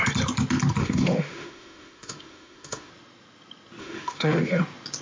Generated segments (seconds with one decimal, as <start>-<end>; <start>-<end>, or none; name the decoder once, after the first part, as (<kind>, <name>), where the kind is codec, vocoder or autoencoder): 0.8-2.9 (autoencoder, DAC-VAE); 3.8-4.6